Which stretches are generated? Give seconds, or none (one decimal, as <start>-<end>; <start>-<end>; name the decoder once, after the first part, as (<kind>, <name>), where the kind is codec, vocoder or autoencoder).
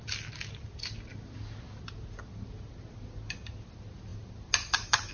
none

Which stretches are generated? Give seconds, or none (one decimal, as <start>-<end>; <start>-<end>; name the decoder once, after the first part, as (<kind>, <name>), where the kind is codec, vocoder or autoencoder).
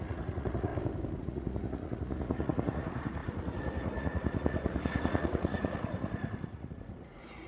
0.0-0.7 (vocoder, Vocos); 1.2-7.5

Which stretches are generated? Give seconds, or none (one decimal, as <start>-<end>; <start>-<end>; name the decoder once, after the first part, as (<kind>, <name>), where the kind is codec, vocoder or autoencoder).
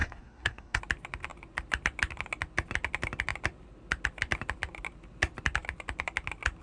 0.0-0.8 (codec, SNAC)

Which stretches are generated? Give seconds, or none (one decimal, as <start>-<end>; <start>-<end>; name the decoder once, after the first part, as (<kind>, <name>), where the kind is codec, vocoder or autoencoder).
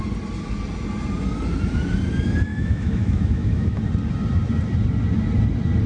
2.5-3.8 (autoencoder, DAC-VAE)